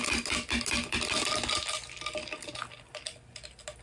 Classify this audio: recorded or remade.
recorded